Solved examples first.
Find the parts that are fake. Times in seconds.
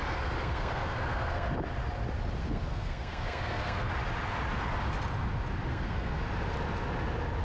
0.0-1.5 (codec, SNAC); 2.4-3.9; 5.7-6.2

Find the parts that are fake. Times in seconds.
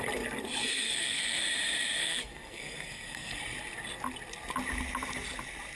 0.6-1.4 (codec, SNAC); 2.0-3.4